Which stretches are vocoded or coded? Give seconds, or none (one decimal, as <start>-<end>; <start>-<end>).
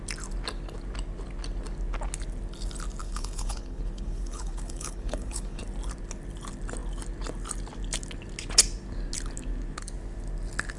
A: 3.0-5.6